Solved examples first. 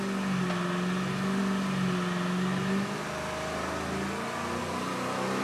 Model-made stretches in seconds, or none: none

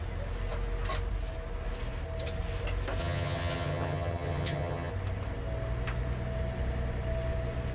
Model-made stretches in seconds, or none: 3.0-4.9 (vocoder, HiFi-GAN)

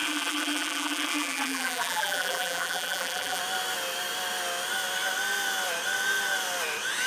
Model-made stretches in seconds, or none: 0.0-3.4 (vocoder, BigVGAN v2)

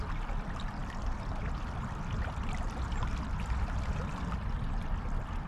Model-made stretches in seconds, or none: none

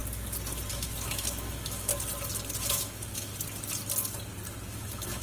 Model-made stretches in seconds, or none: 0.7-1.9 (autoencoder, DAC-VAE); 2.6-3.3; 4.7-5.2

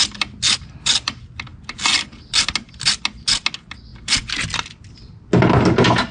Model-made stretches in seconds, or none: none